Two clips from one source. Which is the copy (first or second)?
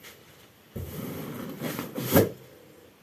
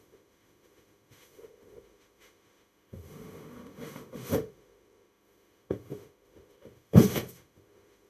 second